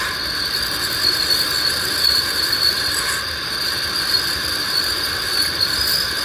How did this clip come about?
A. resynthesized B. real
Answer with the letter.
B